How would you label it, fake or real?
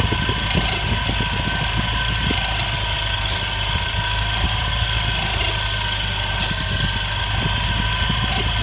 real